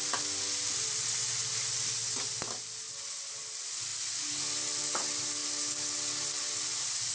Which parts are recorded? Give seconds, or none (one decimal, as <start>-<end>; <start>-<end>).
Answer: 0.0-7.1